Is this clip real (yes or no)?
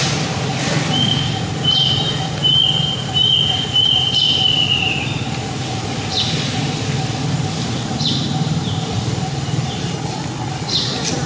no